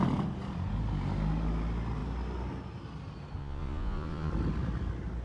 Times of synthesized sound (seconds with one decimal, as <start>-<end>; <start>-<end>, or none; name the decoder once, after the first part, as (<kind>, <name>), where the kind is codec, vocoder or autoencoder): 3.4-4.3 (vocoder, Vocos)